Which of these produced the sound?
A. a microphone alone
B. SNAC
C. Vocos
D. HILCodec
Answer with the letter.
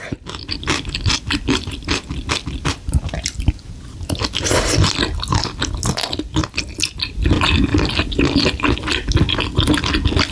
A